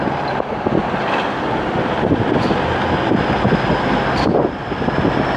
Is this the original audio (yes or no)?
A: yes